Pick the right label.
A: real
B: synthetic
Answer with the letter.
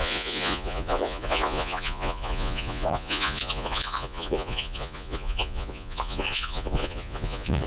B